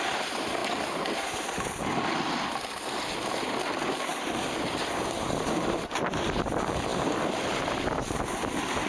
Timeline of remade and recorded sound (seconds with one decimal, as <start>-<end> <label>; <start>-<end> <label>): 0.0-8.9 recorded